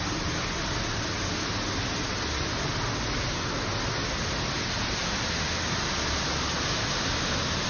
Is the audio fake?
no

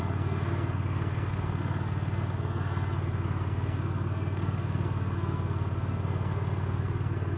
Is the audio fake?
yes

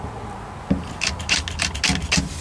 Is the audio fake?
no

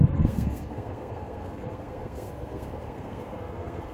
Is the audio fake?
yes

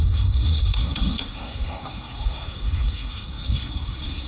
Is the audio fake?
yes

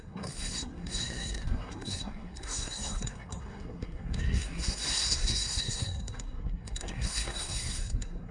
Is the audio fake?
yes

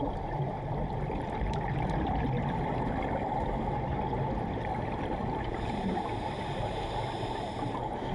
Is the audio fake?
no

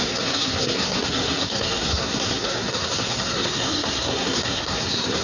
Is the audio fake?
yes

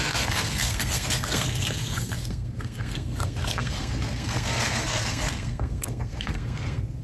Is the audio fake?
yes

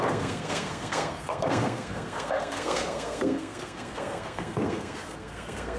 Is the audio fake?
yes